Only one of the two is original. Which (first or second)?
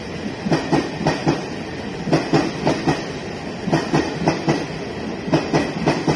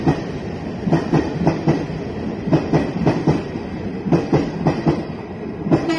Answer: first